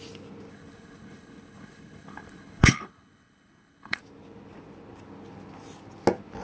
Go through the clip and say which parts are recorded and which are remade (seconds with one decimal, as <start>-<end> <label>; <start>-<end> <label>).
0.0-0.5 recorded; 0.5-4.0 remade; 4.0-6.4 recorded